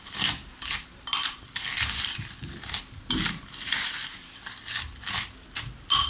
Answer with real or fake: real